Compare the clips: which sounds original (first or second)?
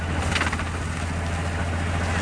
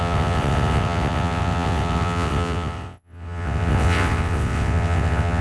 first